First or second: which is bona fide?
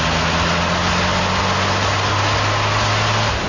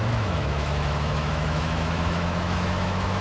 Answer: first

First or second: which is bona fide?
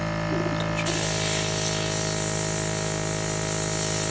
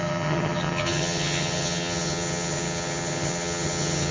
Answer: first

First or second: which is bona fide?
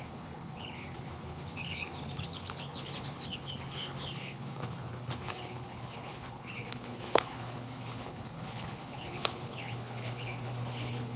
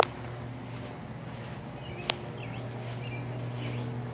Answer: second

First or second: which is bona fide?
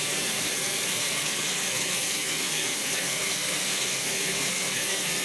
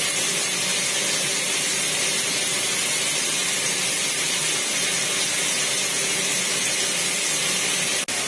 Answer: second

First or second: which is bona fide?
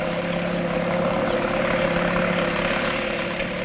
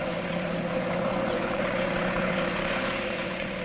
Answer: first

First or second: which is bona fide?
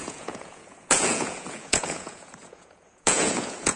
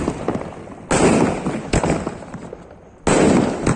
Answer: second